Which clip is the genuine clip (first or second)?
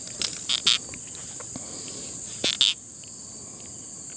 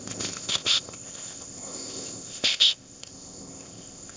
first